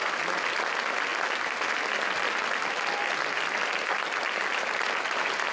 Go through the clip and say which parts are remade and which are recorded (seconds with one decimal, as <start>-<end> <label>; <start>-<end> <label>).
0.0-5.5 recorded